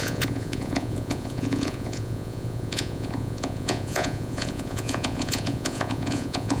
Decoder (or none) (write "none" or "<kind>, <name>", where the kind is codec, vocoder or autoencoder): vocoder, Vocos